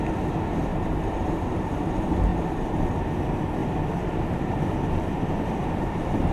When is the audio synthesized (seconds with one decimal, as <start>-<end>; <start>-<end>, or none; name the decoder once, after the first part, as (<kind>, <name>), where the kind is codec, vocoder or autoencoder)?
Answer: 0.7-1.9 (vocoder, BigVGAN v2); 2.3-2.8; 3.6-6.3